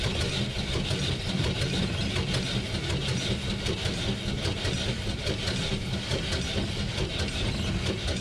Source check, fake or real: real